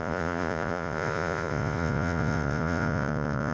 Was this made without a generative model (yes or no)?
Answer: no